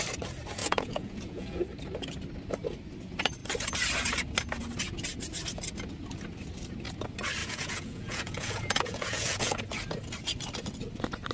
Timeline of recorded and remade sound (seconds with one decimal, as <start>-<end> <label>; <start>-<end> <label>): 0.0-0.6 recorded; 0.6-1.6 remade; 1.6-7.4 recorded; 7.4-9.6 remade; 9.6-11.3 recorded